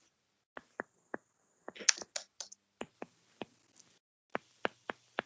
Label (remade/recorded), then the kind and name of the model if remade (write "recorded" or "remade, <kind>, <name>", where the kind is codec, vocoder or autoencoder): recorded